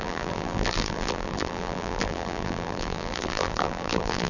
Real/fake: fake